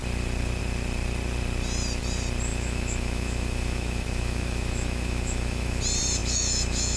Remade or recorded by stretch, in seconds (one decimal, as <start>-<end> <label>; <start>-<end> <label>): 0.0-2.5 recorded; 2.5-5.8 remade; 5.8-6.2 recorded; 6.2-7.0 remade